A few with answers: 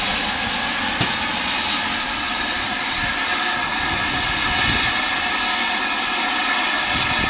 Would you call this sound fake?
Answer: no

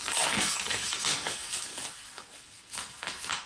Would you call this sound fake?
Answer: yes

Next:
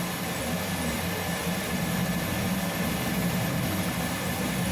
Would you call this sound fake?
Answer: no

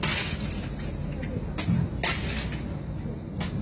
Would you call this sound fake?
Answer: no